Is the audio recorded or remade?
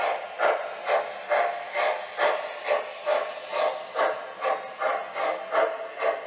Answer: recorded